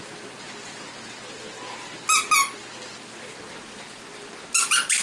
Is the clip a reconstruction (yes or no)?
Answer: no